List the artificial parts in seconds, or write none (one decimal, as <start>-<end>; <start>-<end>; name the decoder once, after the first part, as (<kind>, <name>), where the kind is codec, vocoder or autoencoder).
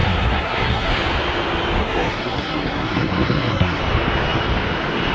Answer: 0.0-0.9 (codec, SNAC); 1.8-3.8